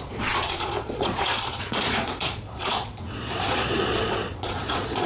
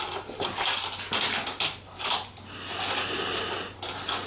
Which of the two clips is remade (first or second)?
first